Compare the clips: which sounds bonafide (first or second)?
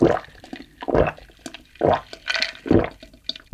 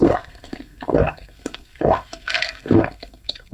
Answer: first